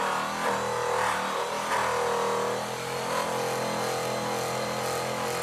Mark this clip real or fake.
real